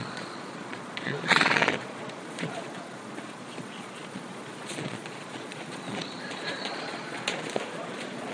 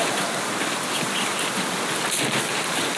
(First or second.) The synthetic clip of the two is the first